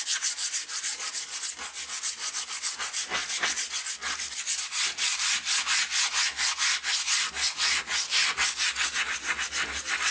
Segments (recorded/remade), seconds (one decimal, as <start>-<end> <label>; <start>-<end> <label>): 0.0-10.1 recorded